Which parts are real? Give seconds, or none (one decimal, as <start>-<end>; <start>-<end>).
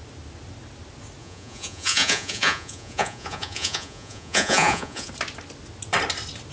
0.0-1.2; 5.1-6.5